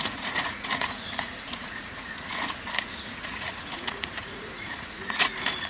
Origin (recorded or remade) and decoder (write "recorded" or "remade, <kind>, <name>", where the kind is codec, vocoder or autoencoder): remade, vocoder, Vocos